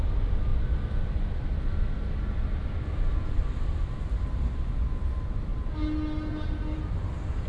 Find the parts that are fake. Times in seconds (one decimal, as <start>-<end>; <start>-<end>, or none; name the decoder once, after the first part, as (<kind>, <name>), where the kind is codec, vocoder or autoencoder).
0.0-0.5 (vocoder, BigVGAN v2); 4.0-5.5; 6.3-7.5